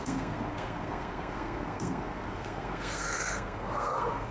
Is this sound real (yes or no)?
no